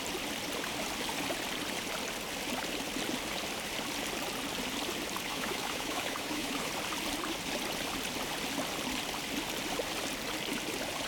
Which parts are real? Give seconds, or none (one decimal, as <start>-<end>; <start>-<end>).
0.0-5.3; 6.7-11.1